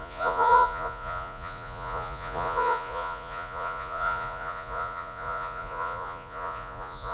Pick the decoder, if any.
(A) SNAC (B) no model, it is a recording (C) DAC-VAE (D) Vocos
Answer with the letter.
D